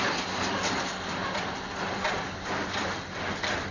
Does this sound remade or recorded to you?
recorded